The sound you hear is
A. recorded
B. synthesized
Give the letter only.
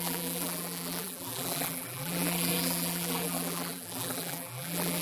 B